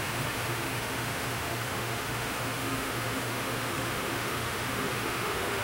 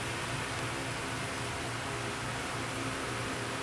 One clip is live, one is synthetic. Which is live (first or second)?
second